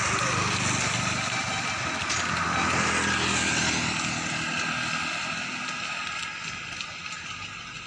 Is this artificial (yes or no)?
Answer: no